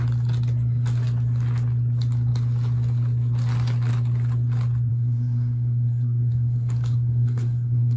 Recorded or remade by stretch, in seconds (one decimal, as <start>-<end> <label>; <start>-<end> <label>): 0.0-4.9 recorded; 4.9-8.0 remade